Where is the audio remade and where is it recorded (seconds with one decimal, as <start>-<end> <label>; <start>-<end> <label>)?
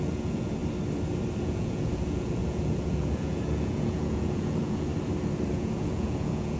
0.0-0.6 remade; 0.6-1.4 recorded; 1.4-4.9 remade; 4.9-5.5 recorded; 5.5-6.6 remade